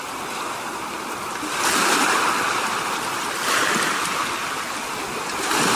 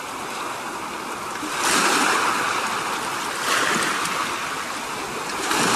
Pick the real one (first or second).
second